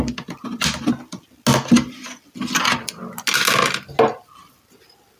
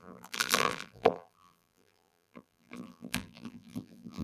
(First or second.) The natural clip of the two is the first